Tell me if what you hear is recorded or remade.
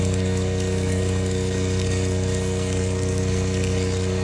remade